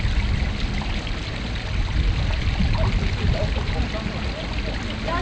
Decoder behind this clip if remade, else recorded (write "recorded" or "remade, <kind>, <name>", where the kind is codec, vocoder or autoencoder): recorded